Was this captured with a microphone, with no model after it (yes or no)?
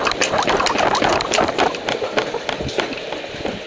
yes